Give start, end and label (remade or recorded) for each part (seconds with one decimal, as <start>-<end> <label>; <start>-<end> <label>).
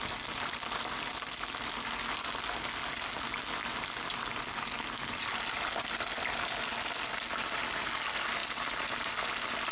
0.0-9.7 recorded